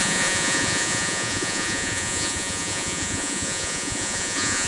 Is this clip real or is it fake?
fake